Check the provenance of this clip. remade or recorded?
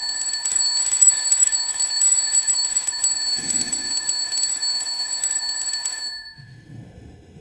remade